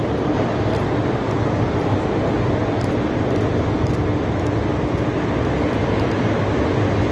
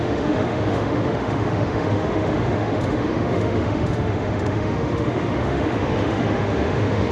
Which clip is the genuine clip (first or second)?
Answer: first